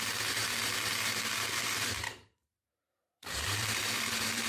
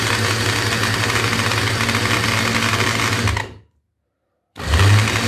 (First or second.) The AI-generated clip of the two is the first